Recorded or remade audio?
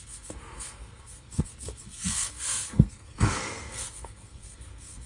remade